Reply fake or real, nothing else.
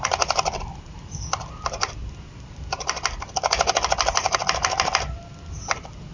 real